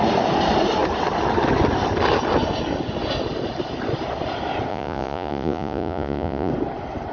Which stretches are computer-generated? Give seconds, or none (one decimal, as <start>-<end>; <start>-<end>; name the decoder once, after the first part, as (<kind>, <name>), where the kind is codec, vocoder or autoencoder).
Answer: 4.7-6.5 (vocoder, Vocos)